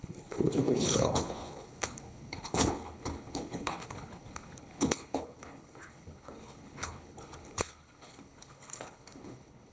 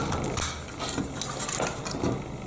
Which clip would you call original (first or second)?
second